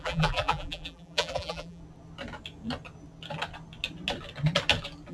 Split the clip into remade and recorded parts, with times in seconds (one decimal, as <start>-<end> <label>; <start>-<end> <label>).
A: 0.0-1.8 remade; 1.8-5.1 recorded